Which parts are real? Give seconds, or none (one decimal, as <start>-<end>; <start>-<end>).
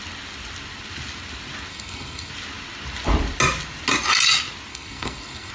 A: 0.0-1.7; 2.3-4.7